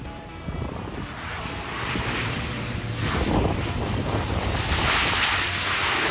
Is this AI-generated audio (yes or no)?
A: no